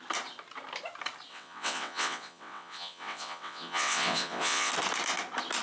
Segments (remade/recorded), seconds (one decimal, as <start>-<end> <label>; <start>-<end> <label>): 0.0-1.3 recorded; 1.3-4.7 remade; 4.7-5.6 recorded